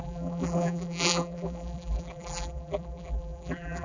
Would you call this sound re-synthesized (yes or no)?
yes